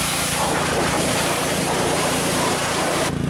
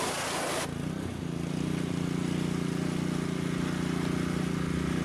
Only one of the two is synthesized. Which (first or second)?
first